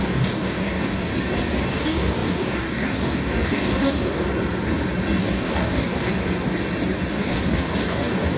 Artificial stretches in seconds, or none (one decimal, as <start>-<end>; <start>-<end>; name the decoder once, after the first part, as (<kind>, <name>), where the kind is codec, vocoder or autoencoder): 0.0-1.1 (codec, DAC); 1.7-4.3; 5.2-6.2; 7.1-8.4